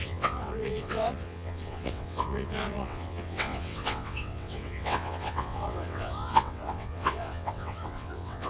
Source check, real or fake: fake